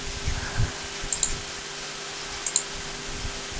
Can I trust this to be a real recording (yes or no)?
yes